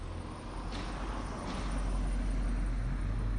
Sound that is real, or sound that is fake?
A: real